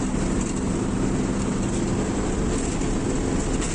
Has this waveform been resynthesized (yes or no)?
no